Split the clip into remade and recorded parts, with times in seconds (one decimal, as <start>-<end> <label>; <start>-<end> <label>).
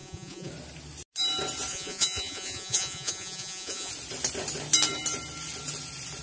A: 0.0-0.5 remade; 0.5-1.7 recorded; 1.7-3.9 remade; 3.9-6.2 recorded